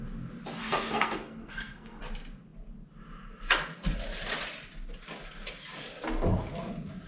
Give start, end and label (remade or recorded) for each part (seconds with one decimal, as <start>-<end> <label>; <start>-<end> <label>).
0.0-0.6 recorded; 0.6-2.0 remade; 2.0-7.1 recorded

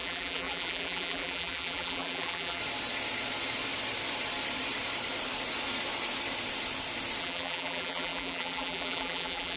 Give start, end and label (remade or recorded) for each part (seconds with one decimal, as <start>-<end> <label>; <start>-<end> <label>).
0.0-2.6 remade; 2.6-7.2 recorded; 7.2-9.6 remade

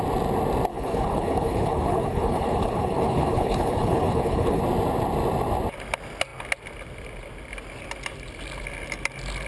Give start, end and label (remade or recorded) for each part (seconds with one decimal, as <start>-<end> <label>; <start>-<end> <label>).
0.0-0.7 recorded; 0.7-4.6 remade; 4.6-9.5 recorded

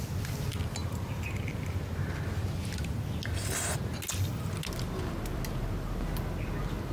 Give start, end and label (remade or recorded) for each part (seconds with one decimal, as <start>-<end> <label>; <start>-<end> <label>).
0.0-0.8 recorded; 0.8-1.3 remade; 1.3-6.9 recorded